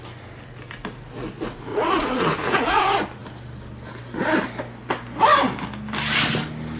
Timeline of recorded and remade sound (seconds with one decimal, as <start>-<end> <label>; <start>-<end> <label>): 0.0-1.7 recorded; 1.7-2.8 remade; 2.8-6.8 recorded